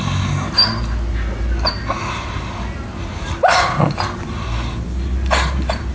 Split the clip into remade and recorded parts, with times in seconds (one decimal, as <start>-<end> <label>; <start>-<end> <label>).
0.0-2.0 recorded; 2.0-2.6 remade; 2.6-5.9 recorded